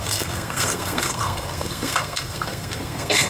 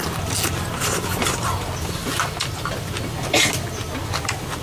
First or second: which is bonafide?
second